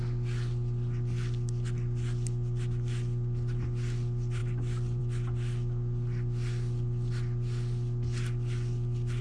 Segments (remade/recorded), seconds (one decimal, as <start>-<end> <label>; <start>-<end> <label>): 0.0-9.2 recorded